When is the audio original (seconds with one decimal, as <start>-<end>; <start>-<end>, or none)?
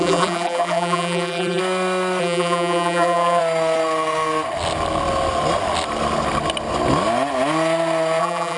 1.6-2.2; 3.4-8.2